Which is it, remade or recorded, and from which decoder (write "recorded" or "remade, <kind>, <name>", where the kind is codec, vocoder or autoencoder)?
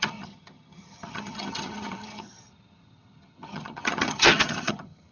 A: remade, vocoder, HiFi-GAN